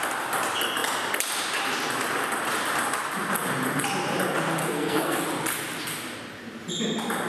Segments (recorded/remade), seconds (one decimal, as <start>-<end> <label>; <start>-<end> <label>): 0.0-4.6 recorded; 4.6-5.2 remade; 5.2-7.3 recorded